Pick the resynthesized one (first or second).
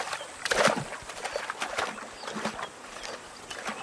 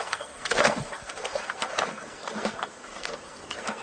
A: second